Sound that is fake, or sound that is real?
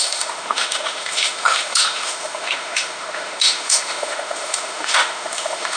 fake